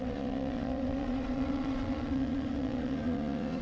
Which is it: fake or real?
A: fake